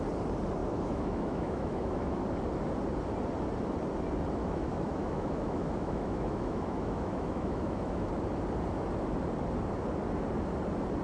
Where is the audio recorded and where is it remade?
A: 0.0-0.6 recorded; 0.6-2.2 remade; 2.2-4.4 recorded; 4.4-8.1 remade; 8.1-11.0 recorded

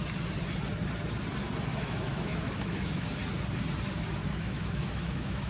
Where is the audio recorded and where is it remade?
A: 0.0-1.7 recorded; 1.7-3.2 remade; 3.2-4.2 recorded; 4.2-5.5 remade

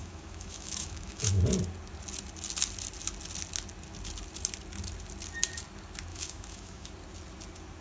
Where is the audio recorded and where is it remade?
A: 0.0-1.4 remade; 1.4-6.1 recorded; 6.1-6.9 remade; 6.9-7.8 recorded

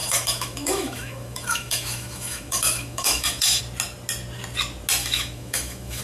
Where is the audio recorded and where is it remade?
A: 0.0-3.6 remade; 3.6-5.0 recorded; 5.0-6.0 remade

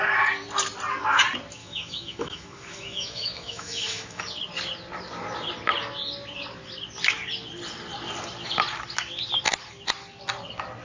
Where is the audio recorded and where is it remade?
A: 0.0-1.6 recorded; 1.6-4.2 remade; 4.2-10.8 recorded

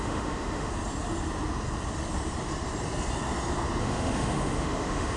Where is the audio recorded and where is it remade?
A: 0.0-0.7 remade; 0.7-3.8 recorded; 3.8-5.2 remade

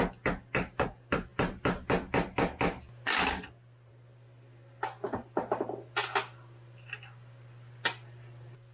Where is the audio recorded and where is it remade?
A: 0.0-8.7 recorded